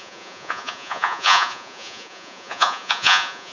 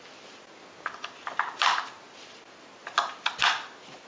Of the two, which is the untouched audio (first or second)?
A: second